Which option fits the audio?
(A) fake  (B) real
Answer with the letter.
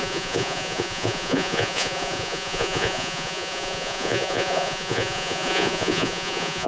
A